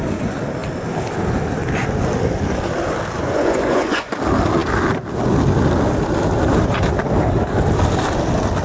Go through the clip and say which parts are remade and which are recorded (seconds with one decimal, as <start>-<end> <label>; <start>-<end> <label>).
0.0-3.2 recorded; 3.2-4.1 remade; 4.1-8.6 recorded

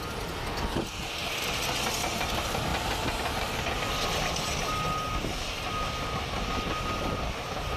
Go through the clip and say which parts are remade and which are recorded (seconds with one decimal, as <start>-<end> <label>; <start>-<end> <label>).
0.0-2.7 recorded; 2.7-3.6 remade; 3.6-7.8 recorded

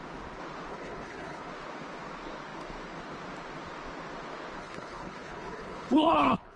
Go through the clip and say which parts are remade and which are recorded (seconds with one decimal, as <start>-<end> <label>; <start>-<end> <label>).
0.0-0.7 recorded; 0.7-1.5 remade; 1.5-4.6 recorded; 4.6-6.6 remade

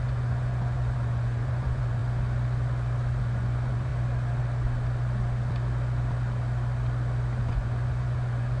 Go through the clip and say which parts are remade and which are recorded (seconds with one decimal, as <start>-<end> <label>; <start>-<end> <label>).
0.0-2.0 remade; 2.0-3.2 recorded; 3.2-3.9 remade; 3.9-7.4 recorded; 7.4-8.6 remade

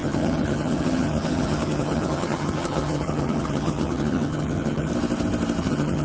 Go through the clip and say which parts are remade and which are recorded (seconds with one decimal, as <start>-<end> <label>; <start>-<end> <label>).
0.0-4.9 remade; 4.9-5.6 recorded; 5.6-6.0 remade

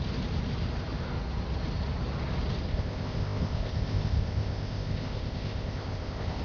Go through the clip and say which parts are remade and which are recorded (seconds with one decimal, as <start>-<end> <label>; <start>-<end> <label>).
0.0-2.7 recorded; 2.7-6.4 remade

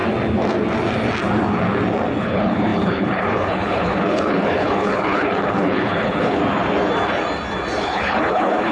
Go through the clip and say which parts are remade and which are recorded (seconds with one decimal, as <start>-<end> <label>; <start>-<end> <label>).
0.0-2.2 recorded; 2.2-6.4 remade; 6.4-7.8 recorded; 7.8-8.7 remade